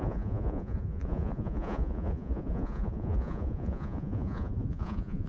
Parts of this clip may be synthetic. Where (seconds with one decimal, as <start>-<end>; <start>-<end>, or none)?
0.0-5.3

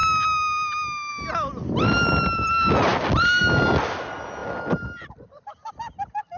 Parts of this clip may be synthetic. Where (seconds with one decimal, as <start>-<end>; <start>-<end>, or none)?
none

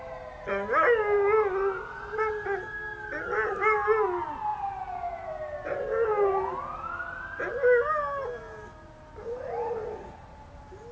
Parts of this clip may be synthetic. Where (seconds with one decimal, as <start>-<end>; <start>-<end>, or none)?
4.5-5.3

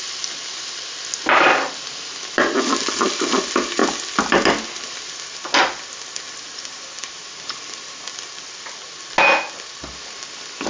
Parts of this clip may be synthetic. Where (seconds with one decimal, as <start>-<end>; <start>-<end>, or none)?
none